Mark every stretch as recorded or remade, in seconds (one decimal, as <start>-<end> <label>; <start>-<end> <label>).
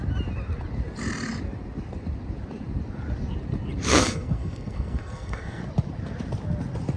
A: 0.0-3.9 recorded; 3.9-5.6 remade; 5.6-7.0 recorded